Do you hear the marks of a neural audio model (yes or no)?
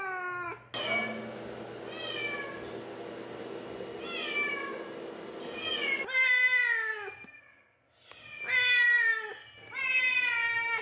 no